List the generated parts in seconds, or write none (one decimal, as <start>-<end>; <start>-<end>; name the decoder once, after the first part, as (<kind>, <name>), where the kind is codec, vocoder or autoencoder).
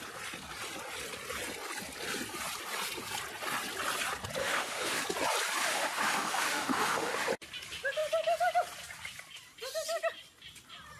4.4-5.0 (autoencoder, DAC-VAE); 5.6-7.3